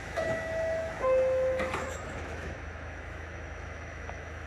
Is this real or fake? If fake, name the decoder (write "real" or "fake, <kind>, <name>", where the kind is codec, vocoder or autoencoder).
fake, autoencoder, DAC-VAE